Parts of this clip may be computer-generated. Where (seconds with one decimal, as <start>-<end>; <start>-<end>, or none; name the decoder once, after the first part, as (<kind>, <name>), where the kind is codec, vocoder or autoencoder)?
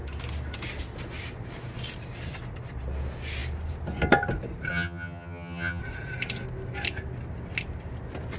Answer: 4.7-5.8 (vocoder, HiFi-GAN)